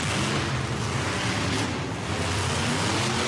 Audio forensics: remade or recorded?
recorded